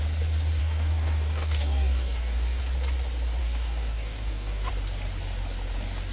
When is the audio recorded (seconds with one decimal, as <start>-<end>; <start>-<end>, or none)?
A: 0.0-0.6; 2.6-3.4; 4.7-6.1